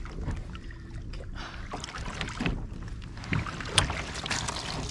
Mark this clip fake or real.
real